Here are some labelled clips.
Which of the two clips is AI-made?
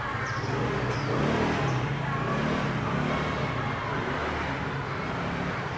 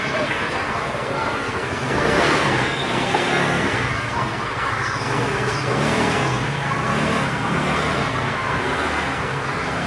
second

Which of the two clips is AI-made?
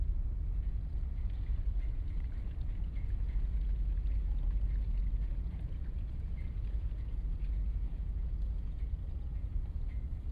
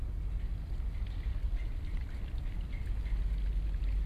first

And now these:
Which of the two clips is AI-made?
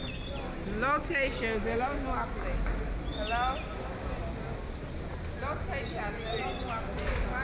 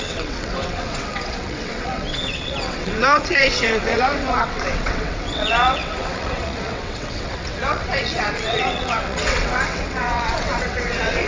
second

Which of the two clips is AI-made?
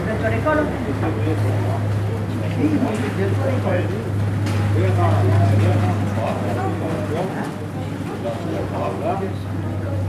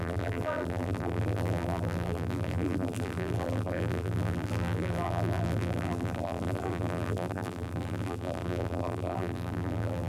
second